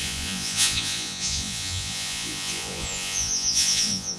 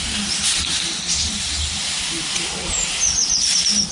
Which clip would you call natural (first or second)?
second